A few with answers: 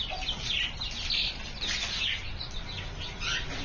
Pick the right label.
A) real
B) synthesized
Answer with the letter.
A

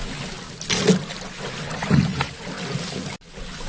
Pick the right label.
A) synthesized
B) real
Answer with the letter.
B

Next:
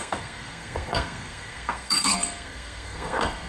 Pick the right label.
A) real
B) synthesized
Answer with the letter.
B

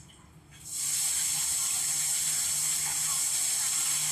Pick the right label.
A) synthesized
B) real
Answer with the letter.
B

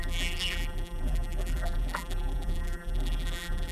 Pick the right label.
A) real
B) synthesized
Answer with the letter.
B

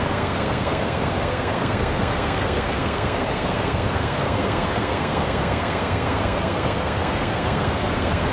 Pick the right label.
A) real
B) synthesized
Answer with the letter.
B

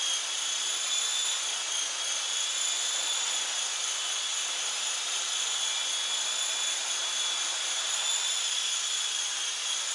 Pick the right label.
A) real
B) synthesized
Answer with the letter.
A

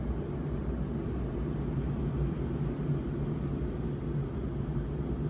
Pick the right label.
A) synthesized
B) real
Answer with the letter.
B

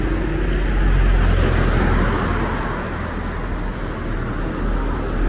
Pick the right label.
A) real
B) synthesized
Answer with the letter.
A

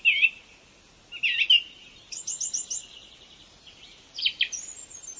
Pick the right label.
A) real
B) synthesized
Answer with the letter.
A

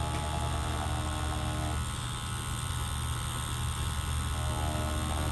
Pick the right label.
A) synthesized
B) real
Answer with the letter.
B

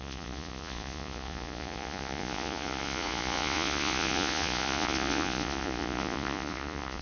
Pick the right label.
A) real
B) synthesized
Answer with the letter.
B